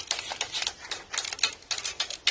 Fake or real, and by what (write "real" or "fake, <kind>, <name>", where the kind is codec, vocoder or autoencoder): real